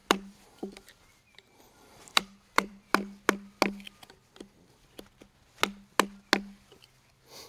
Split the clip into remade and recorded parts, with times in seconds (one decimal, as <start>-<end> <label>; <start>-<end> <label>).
0.0-0.7 remade; 0.7-1.1 recorded; 1.1-2.9 remade; 2.9-7.5 recorded